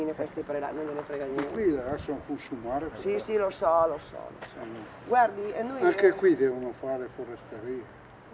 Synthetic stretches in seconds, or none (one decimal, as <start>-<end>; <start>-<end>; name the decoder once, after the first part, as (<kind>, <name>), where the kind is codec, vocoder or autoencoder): none